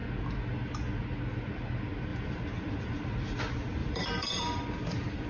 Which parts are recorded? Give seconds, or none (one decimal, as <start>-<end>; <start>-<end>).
0.0-2.1; 3.4-3.8